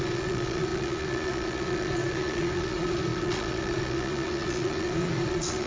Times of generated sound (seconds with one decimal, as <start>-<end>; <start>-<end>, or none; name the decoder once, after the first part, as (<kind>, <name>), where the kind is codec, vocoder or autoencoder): 0.0-5.7 (vocoder, Vocos)